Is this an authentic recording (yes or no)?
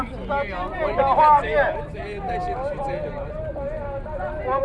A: yes